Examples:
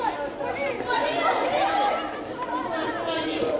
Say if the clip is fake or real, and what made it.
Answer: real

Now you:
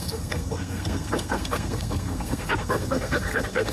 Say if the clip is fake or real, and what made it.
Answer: fake, codec, SNAC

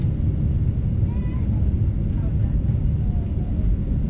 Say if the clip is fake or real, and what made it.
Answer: real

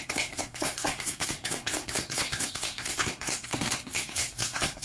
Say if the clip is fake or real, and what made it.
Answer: fake, codec, SNAC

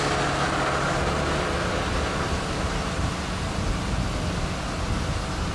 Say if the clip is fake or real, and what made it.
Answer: real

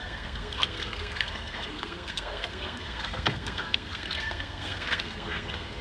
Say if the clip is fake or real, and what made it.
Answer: fake, codec, SNAC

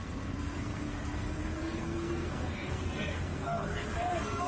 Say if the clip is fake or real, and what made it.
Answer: fake, codec, SNAC